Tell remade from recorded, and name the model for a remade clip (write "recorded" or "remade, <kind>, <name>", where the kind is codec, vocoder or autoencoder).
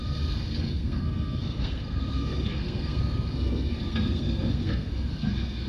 remade, codec, SNAC